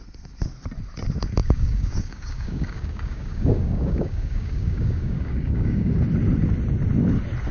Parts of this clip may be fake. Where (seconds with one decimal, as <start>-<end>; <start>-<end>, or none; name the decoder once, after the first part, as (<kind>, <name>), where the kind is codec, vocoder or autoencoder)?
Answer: 1.4-5.9 (codec, DAC)

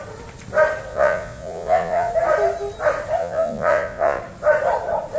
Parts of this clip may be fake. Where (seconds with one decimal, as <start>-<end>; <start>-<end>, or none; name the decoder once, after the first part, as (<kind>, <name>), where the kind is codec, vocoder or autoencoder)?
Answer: 0.9-2.1 (vocoder, Vocos); 3.2-4.2

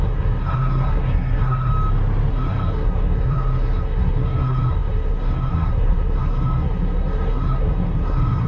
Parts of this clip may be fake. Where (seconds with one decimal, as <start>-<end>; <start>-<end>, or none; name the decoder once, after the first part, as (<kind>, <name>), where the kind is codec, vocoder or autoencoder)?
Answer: 0.0-1.7 (codec, SNAC); 2.3-8.5

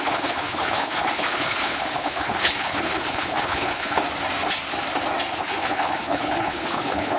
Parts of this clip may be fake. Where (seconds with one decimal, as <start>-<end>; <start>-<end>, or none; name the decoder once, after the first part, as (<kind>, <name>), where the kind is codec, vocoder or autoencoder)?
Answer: 0.0-4.0 (codec, HILCodec); 5.3-7.2

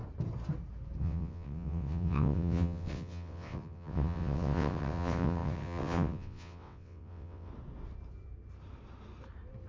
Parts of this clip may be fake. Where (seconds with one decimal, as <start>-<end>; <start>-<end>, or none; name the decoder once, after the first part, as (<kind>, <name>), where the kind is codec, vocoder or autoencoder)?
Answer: 1.0-7.5 (vocoder, WaveNeXt)